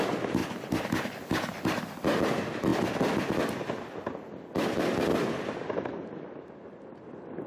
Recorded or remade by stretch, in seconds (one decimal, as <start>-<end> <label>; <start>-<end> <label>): 0.0-0.4 recorded; 0.4-1.1 remade; 1.1-7.5 recorded